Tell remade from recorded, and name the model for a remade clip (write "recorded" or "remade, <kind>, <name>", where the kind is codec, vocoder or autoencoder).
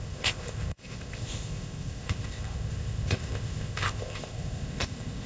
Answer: remade, codec, ZipCodec